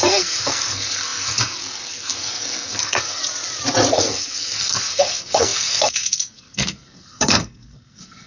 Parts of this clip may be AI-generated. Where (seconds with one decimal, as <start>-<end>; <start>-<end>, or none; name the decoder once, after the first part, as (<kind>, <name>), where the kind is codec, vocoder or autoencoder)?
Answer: 0.0-3.2 (codec, SNAC); 3.9-8.3